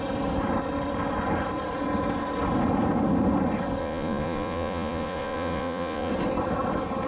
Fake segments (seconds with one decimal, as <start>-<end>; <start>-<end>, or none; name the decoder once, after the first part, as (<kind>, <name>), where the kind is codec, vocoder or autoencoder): 3.8-6.1 (vocoder, Vocos)